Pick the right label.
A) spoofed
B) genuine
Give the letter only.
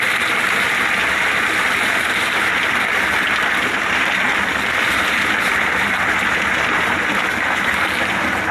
B